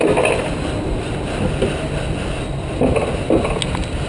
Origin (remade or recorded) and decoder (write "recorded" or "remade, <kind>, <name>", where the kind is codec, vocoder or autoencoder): recorded